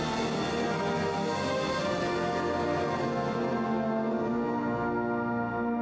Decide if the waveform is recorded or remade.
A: recorded